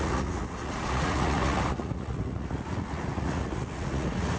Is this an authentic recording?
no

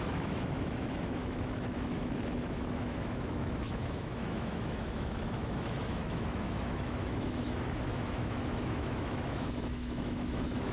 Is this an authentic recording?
no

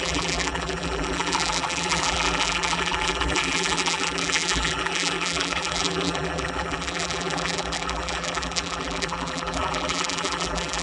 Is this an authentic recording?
no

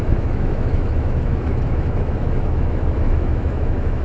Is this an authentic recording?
no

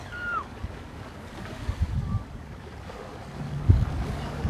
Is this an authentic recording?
no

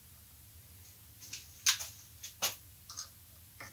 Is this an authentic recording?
yes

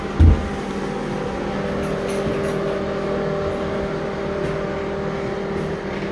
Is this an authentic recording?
yes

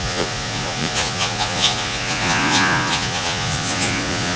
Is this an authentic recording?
no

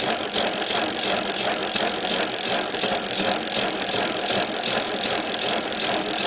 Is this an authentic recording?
yes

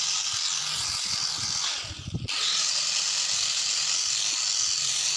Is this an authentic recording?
yes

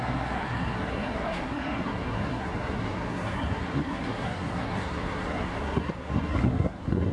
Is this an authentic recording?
no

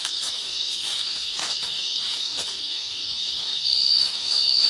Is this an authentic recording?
no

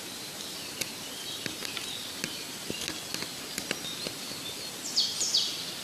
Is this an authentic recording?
yes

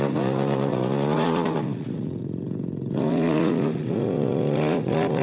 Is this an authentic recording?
no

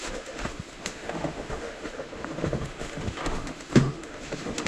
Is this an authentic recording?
no